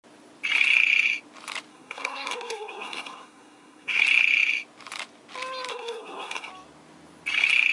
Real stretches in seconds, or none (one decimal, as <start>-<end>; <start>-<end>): 0.0-1.7; 4.0-5.7; 6.5-7.7